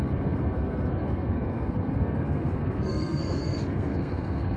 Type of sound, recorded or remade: remade